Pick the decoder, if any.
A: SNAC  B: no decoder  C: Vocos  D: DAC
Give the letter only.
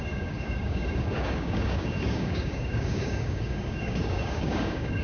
D